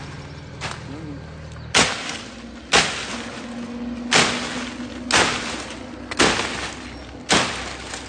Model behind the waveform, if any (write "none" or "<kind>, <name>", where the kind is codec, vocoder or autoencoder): none